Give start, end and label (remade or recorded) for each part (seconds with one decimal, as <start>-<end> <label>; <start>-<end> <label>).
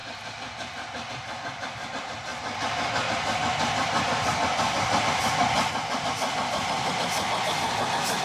0.0-8.2 recorded